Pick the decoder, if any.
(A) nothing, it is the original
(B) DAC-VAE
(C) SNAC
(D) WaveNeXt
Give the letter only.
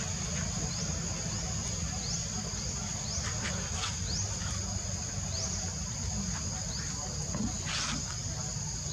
A